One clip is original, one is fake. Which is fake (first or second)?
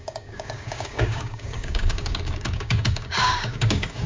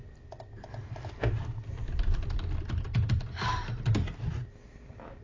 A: first